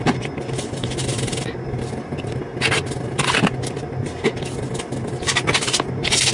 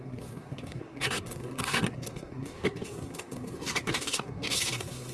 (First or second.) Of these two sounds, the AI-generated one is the second